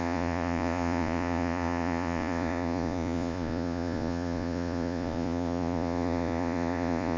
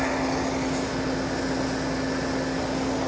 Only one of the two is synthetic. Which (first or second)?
first